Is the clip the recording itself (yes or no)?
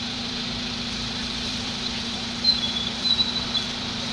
no